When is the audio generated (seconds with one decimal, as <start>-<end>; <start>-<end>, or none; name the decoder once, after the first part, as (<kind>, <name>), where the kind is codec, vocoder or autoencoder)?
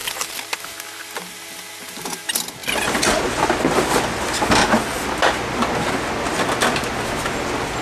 none